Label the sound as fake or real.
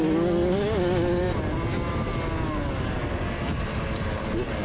real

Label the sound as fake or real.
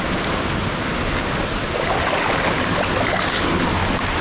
real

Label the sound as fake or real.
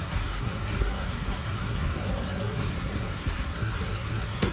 fake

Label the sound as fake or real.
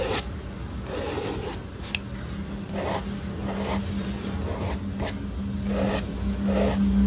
real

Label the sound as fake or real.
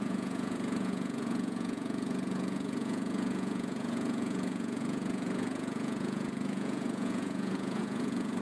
fake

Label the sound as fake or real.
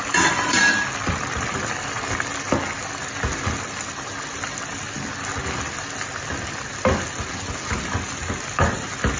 real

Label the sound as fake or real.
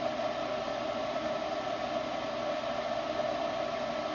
real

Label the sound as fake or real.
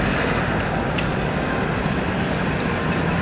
real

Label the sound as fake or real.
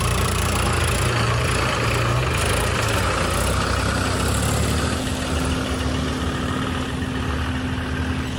real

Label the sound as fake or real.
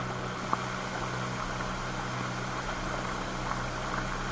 real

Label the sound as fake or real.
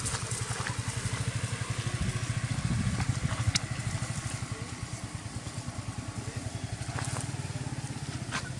real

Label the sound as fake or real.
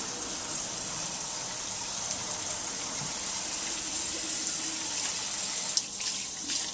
real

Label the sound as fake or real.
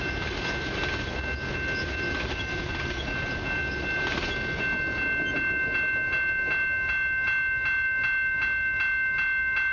real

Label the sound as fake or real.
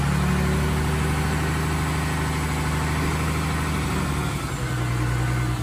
real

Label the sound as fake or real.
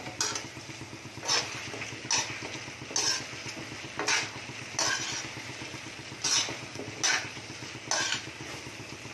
real